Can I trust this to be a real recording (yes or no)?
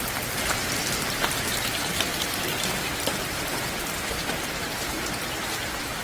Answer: yes